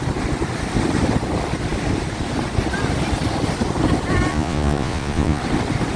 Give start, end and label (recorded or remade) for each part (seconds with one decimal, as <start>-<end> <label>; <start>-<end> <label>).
0.0-4.3 recorded; 4.3-5.4 remade; 5.4-6.0 recorded